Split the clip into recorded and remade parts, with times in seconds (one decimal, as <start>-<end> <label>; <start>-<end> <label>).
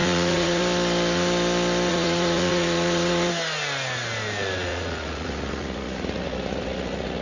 0.0-0.6 remade; 0.6-1.9 recorded; 1.9-3.3 remade; 3.3-4.7 recorded; 4.7-7.2 remade